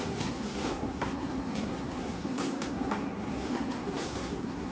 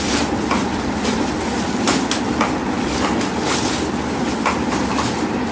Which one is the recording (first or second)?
second